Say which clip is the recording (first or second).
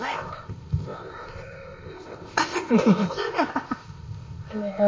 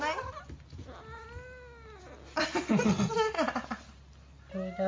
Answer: second